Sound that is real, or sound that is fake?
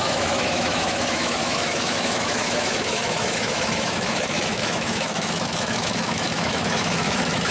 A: fake